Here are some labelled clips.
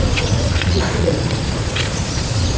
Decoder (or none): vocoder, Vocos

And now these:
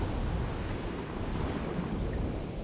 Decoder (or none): none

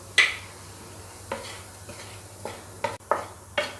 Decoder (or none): none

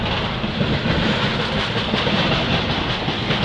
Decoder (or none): none